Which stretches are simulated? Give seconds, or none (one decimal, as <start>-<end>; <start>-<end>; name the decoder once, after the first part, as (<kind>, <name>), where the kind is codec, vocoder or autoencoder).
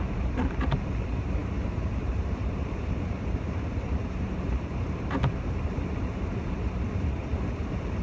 0.0-7.3 (vocoder, BigVGAN v2)